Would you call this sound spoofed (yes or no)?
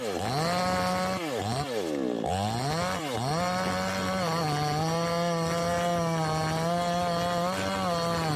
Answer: no